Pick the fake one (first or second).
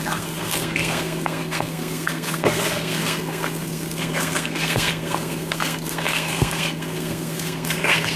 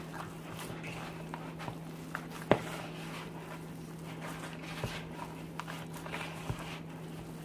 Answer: first